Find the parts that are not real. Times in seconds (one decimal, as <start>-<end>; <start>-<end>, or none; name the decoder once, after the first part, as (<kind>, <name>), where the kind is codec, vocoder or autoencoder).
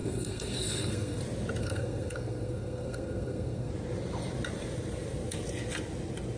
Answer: 0.0-1.2 (codec, SNAC); 1.6-3.7